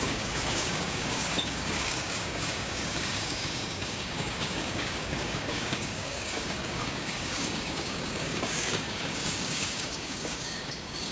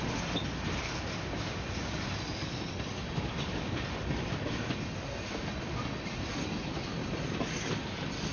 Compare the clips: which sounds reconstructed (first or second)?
first